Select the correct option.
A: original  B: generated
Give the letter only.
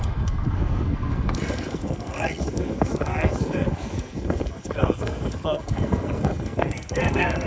B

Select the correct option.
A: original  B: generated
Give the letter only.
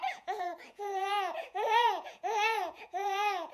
B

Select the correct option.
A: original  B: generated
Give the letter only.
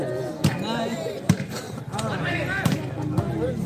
A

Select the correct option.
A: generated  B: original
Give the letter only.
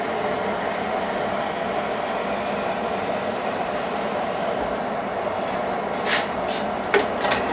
B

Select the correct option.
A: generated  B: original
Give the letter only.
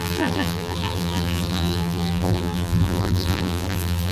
A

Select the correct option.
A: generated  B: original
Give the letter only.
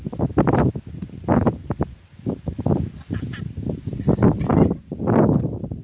B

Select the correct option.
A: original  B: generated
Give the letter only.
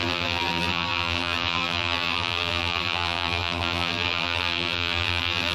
B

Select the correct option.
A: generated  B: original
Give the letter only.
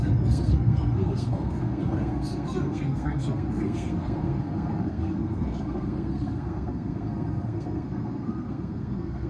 A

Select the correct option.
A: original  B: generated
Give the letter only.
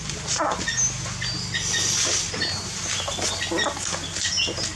A